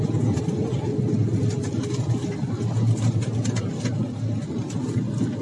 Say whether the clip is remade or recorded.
recorded